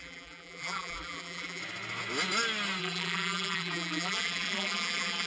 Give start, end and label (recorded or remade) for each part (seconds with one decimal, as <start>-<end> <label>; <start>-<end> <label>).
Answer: 0.0-1.6 remade; 1.6-2.8 recorded; 2.8-5.3 remade